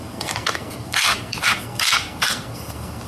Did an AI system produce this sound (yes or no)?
yes